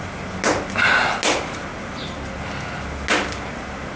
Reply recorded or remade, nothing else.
recorded